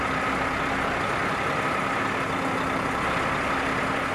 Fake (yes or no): no